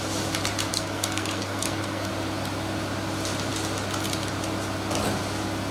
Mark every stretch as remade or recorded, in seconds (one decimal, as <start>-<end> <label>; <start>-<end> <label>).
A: 0.0-0.7 recorded; 0.7-2.1 remade; 2.1-5.7 recorded